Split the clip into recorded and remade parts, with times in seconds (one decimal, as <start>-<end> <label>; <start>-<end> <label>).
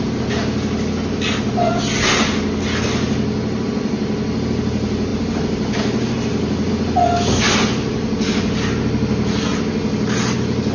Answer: 0.0-10.7 recorded